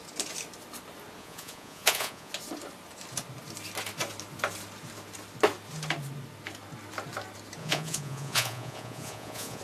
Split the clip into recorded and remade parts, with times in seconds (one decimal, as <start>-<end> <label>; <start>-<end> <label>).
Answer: 0.0-1.2 recorded; 1.2-2.3 remade; 2.3-7.6 recorded; 7.6-9.6 remade